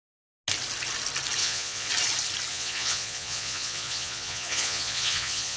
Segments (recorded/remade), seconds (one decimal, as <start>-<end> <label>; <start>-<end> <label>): 0.0-1.4 recorded; 1.4-1.9 remade; 1.9-2.5 recorded; 2.5-5.6 remade